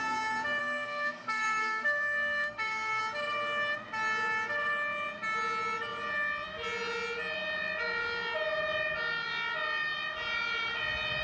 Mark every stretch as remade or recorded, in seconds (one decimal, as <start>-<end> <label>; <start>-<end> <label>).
0.0-0.6 recorded; 0.6-3.0 remade; 3.0-11.2 recorded